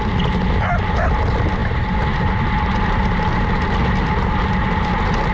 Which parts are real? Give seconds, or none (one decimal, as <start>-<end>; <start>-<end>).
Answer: 0.0-5.3